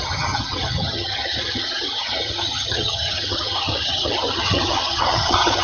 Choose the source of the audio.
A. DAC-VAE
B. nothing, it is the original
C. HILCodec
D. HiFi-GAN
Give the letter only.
D